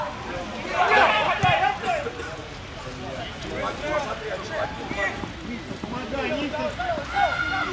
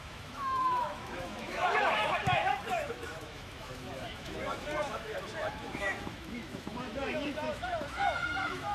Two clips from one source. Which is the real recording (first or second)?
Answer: first